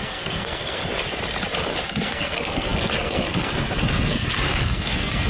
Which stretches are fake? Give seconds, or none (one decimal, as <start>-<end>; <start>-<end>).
0.0-0.8; 1.8-5.3